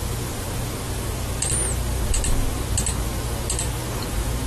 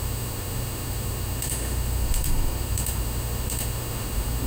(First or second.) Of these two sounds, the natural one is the first